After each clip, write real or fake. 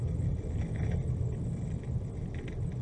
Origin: real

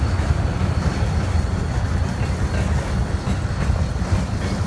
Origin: real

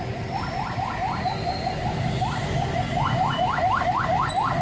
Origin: real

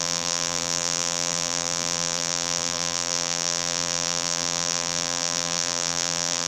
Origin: fake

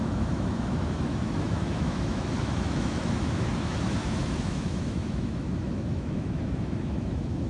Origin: fake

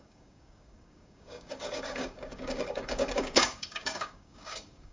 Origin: fake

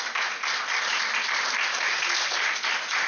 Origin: real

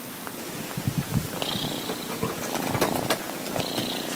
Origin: real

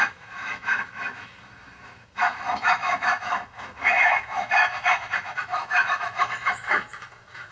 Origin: fake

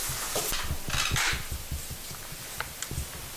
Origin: real